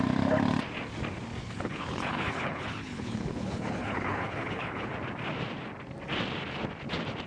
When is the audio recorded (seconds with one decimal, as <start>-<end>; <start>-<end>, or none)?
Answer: 0.0-1.4; 4.9-7.3